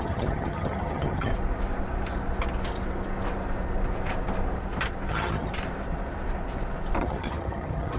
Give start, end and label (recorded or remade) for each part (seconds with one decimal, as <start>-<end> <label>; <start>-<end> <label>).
0.0-1.3 remade; 1.3-5.1 recorded; 5.1-5.5 remade; 5.5-7.0 recorded; 7.0-8.0 remade